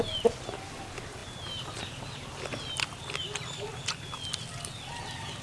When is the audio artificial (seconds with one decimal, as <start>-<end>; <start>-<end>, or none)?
none